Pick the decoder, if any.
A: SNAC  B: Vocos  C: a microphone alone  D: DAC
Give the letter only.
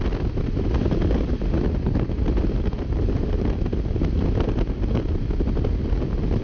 C